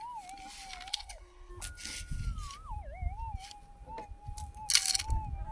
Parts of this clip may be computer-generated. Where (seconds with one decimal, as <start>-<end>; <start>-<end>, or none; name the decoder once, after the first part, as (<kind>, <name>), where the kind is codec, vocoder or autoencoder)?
0.9-1.5 (codec, HILCodec)